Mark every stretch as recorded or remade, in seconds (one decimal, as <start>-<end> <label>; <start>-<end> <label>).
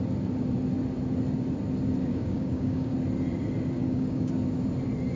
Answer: 0.0-2.1 recorded; 2.1-2.9 remade; 2.9-3.8 recorded; 3.8-4.3 remade; 4.3-5.2 recorded